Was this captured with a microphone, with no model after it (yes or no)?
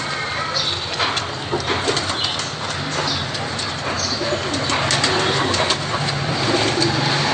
yes